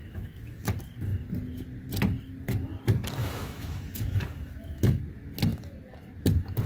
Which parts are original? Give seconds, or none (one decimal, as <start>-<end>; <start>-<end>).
0.6-3.2; 5.0-6.7